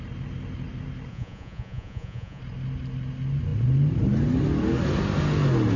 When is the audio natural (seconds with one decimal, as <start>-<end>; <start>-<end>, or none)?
0.0-1.1; 2.4-5.8